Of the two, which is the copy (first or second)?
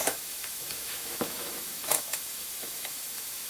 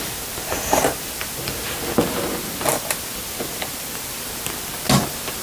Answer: first